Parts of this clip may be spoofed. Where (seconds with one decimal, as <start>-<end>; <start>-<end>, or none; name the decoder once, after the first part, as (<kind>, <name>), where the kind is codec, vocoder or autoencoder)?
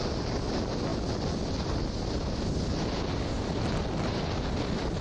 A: none